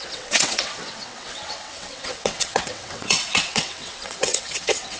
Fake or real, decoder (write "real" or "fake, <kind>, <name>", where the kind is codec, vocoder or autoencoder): fake, vocoder, WaveNeXt